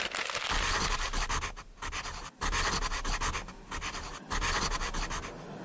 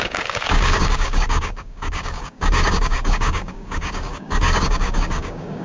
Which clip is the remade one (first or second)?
second